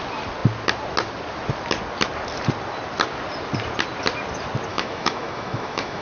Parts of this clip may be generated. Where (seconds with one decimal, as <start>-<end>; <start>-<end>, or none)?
4.7-6.0